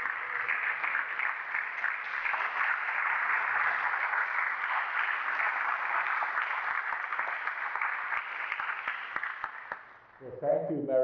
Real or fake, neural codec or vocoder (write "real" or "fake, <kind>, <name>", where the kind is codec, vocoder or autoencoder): real